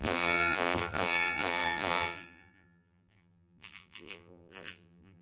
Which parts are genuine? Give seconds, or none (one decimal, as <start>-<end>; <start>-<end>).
none